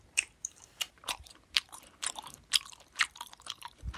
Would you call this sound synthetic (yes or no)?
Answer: yes